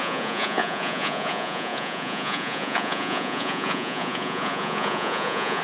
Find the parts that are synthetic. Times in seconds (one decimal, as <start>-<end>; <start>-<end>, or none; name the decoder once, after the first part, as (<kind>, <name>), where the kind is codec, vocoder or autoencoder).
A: 0.0-5.6 (vocoder, Vocos)